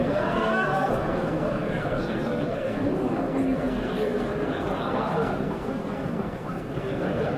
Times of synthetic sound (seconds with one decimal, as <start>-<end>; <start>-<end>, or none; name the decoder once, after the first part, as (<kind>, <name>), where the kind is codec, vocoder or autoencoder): 0.0-7.4 (codec, SNAC)